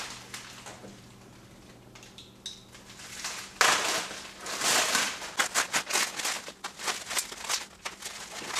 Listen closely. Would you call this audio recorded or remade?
recorded